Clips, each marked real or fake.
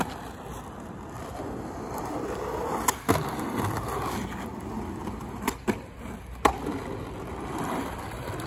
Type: real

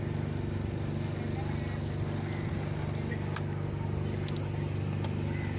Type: real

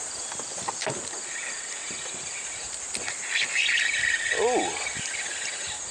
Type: real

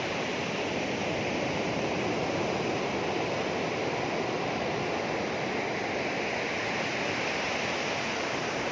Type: real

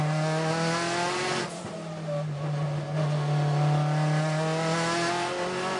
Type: real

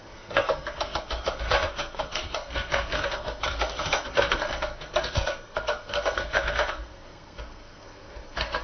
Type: fake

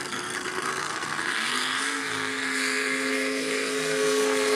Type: fake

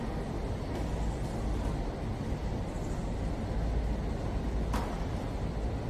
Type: real